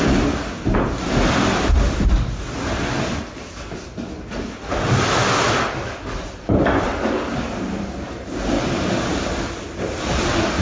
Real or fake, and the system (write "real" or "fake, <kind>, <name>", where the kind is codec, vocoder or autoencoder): real